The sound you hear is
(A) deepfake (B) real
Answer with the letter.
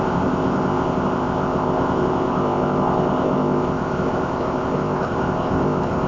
A